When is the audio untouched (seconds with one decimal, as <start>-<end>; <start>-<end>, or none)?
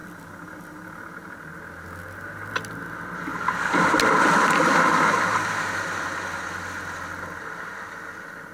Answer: 0.0-8.5